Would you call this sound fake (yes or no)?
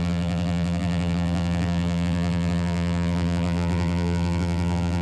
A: yes